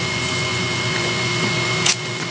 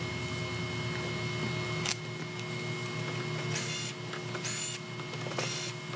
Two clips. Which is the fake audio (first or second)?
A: first